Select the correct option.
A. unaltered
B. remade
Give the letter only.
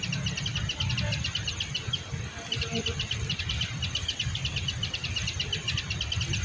A